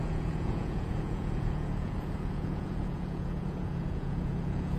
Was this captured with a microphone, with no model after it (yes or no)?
no